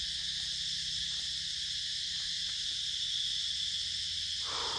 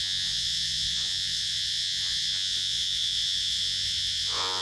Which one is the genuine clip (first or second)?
first